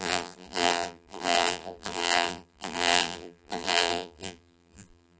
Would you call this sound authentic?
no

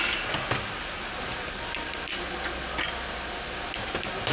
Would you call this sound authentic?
yes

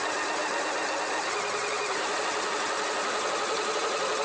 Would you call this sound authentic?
yes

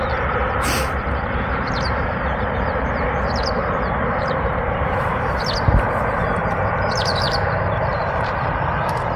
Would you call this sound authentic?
no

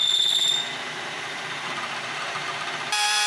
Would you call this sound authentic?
no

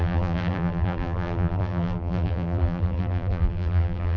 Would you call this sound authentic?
no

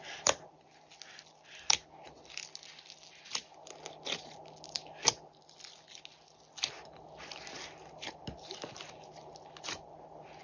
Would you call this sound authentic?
yes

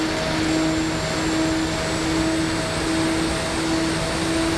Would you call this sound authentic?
yes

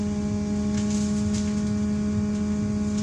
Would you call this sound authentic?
yes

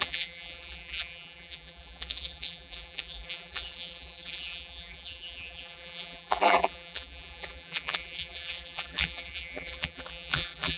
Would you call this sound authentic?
no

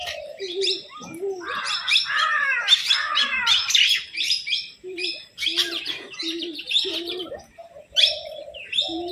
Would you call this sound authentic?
no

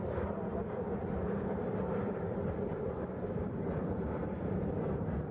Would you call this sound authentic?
no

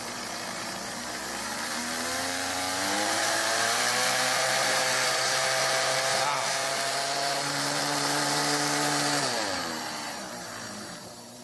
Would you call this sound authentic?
no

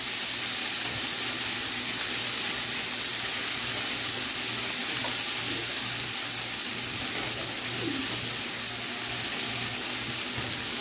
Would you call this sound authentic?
yes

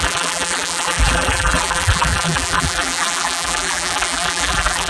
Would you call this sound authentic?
no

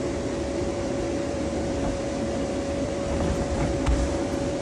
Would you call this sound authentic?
no